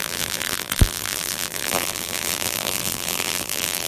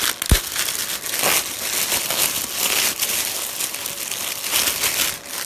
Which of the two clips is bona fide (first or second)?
second